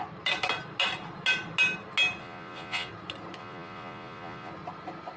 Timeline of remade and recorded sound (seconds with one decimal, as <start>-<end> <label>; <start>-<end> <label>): 0.0-2.2 recorded; 2.2-2.9 remade; 2.9-3.4 recorded; 3.4-4.5 remade; 4.5-5.2 recorded